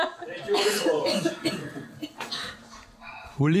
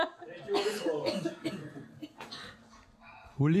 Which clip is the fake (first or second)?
first